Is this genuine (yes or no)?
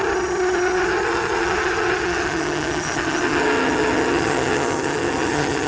no